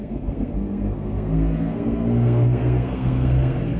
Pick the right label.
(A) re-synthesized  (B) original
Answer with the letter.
A